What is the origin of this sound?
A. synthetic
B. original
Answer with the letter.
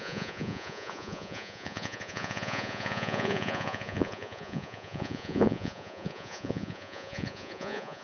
A